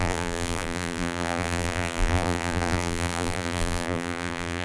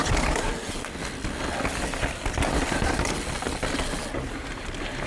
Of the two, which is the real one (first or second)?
second